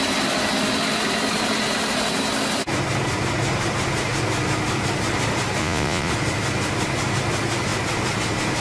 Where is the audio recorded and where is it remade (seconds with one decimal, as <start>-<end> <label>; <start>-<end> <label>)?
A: 0.0-5.6 recorded; 5.6-6.1 remade; 6.1-8.6 recorded